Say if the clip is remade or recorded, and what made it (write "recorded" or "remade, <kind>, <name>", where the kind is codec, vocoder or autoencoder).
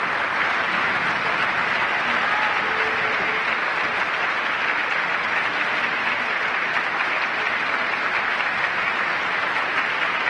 recorded